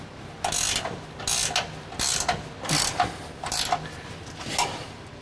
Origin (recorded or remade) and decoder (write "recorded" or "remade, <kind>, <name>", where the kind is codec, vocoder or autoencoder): recorded